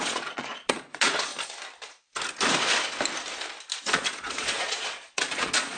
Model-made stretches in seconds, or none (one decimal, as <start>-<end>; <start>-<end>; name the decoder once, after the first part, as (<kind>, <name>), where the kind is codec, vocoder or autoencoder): 0.0-1.3 (vocoder, Vocos); 3.8-5.8